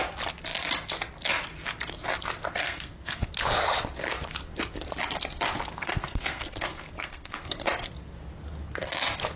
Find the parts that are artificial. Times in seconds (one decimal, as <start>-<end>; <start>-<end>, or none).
2.5-3.3; 5.7-7.6

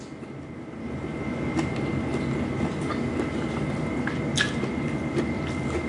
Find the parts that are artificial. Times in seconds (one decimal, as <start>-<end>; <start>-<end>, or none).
none

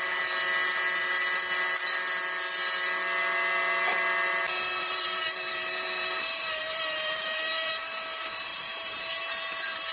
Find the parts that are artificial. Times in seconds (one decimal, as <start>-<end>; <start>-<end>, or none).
4.8-7.7; 8.5-9.2

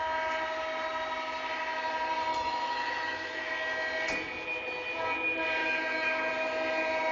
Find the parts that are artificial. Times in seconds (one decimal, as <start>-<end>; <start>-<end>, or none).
2.3-3.5; 5.6-6.3

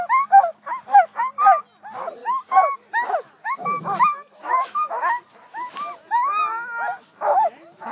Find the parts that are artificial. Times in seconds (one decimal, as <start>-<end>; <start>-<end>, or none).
0.5-1.2; 2.2-5.0

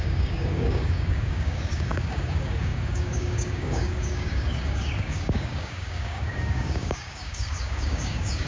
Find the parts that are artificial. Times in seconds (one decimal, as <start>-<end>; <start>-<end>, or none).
0.0-8.5

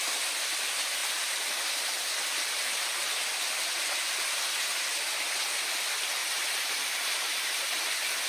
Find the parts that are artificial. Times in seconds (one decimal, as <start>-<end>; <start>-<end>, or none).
6.2-7.8

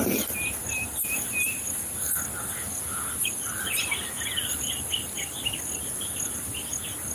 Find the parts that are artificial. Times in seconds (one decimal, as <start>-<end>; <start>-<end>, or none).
none